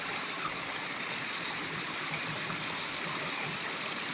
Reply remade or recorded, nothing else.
recorded